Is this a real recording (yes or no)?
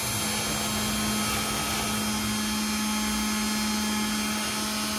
yes